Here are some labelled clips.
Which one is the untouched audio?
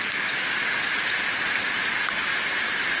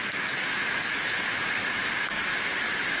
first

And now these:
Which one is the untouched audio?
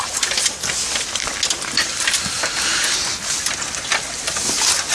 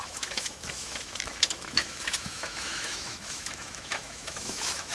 first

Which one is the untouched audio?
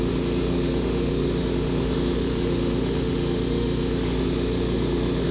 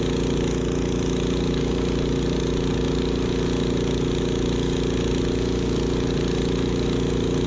second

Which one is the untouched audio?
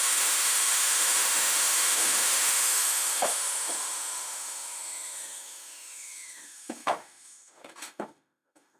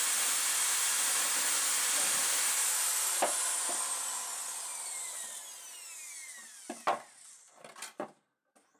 second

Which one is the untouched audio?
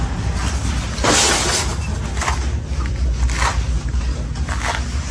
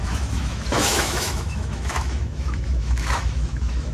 first